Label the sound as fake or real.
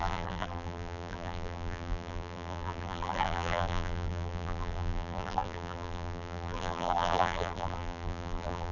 fake